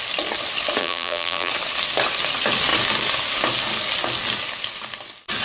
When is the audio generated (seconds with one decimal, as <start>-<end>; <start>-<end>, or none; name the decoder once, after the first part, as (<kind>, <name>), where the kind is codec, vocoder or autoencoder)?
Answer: 0.8-1.5 (vocoder, BigVGAN v2)